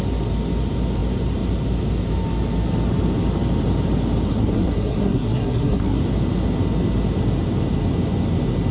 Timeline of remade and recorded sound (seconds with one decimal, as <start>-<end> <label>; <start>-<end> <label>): 0.0-4.3 recorded; 4.3-6.0 remade; 6.0-8.7 recorded